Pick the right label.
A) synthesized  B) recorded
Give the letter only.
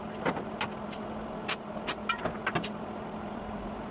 B